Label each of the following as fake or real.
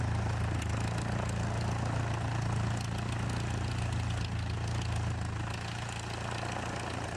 real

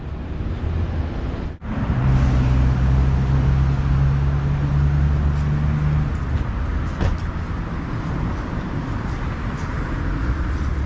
real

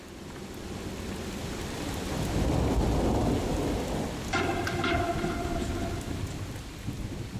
real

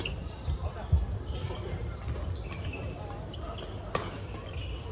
real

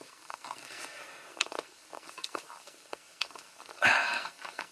fake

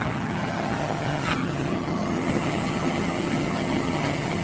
fake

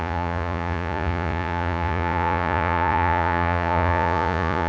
fake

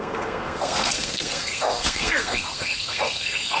fake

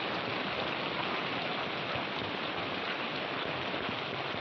real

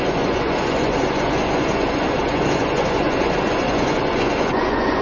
fake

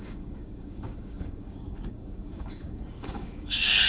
fake